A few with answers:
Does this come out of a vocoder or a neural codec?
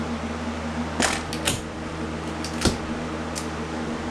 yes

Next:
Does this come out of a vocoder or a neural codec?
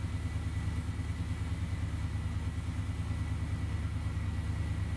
no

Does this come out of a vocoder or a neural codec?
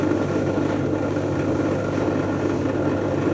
no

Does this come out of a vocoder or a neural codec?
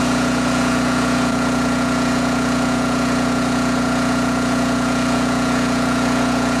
yes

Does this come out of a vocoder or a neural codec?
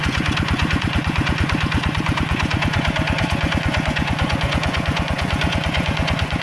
yes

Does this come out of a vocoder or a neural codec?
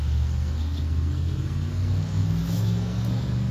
yes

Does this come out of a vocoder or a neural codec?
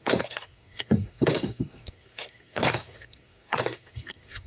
yes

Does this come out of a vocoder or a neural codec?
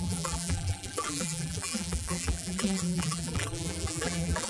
yes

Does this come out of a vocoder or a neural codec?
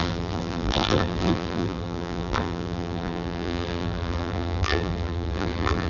yes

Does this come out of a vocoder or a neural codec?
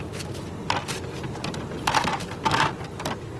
no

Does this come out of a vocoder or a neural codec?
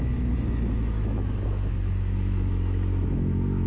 yes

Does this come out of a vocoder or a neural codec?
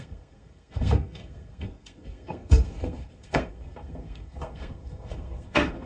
yes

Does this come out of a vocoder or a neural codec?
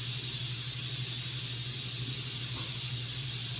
no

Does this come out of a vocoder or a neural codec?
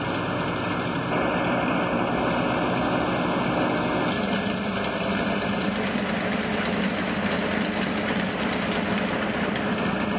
no